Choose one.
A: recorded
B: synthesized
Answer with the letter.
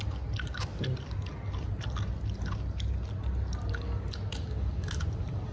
A